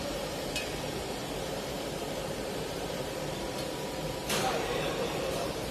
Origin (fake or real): fake